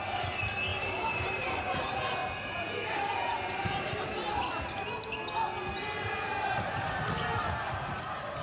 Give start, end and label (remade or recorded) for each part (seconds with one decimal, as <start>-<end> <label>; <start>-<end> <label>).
0.0-0.7 recorded; 0.7-1.6 remade; 1.6-2.2 recorded; 2.2-4.3 remade; 4.3-8.4 recorded